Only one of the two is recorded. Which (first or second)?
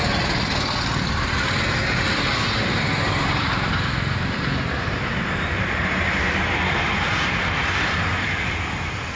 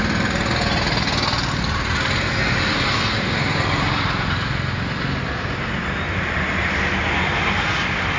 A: second